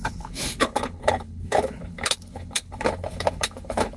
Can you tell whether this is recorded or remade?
remade